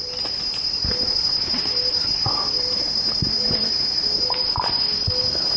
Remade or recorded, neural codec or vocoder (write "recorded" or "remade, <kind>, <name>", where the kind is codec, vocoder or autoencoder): recorded